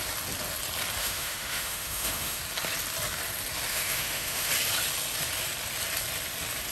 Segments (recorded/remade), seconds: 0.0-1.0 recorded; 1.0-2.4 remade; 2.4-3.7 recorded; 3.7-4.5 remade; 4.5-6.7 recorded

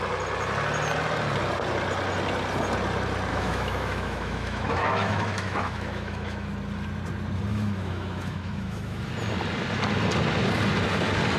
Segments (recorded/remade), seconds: 0.0-3.3 recorded; 3.3-6.5 remade; 6.5-7.5 recorded; 7.5-9.1 remade; 9.1-11.4 recorded

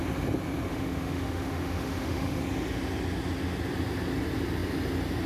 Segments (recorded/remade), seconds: 0.0-0.7 recorded; 0.7-2.4 remade; 2.4-5.3 recorded